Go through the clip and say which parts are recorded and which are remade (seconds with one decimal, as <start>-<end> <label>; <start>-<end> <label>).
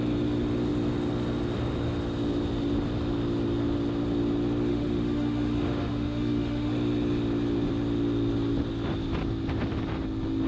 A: 0.0-4.7 recorded; 4.7-6.7 remade; 6.7-10.5 recorded